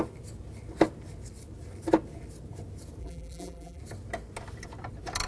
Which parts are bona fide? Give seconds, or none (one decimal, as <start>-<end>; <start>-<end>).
0.0-3.0; 3.8-5.3